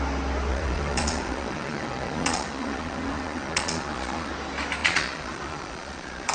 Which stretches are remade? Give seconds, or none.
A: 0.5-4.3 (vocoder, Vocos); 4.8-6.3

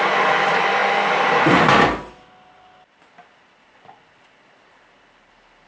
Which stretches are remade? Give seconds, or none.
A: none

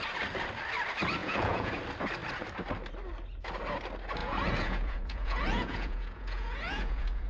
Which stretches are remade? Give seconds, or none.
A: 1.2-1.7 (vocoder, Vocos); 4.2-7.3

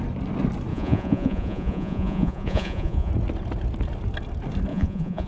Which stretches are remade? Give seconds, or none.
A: 0.7-3.1 (vocoder, Vocos); 4.7-5.3

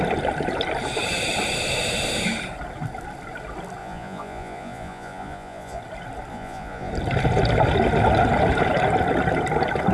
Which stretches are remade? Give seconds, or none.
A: 3.8-5.8 (vocoder, Vocos); 6.3-6.9

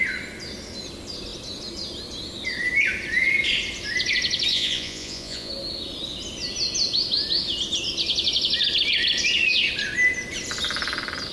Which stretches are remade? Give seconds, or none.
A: 4.5-5.5 (vocoder, Vocos)

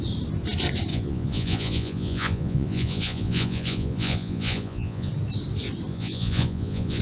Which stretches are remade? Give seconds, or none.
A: 0.9-5.1 (vocoder, Vocos); 5.9-7.0